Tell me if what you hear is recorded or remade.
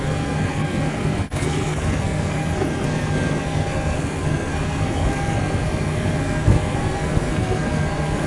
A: remade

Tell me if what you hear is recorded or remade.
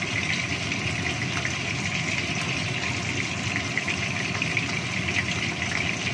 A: recorded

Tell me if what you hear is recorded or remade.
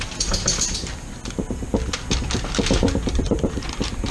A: recorded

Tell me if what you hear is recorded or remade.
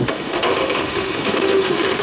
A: remade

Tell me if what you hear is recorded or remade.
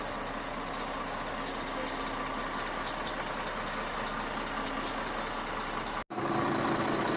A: recorded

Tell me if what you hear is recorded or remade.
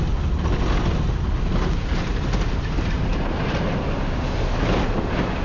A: recorded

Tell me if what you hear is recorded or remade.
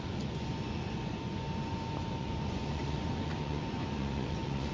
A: remade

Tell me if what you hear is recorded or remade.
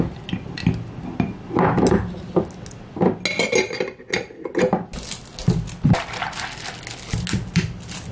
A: recorded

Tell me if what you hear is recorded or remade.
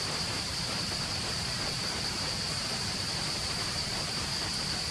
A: remade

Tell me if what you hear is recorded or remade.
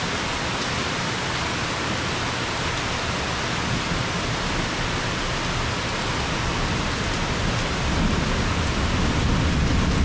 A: recorded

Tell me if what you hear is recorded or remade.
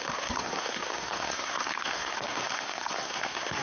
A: remade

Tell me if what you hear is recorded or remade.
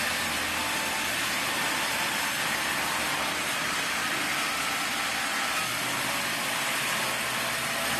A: recorded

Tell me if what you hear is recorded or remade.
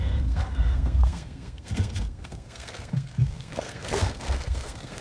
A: remade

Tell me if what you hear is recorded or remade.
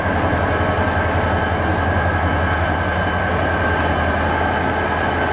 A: recorded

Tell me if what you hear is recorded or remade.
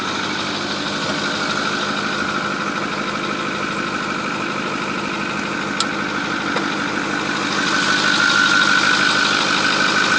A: recorded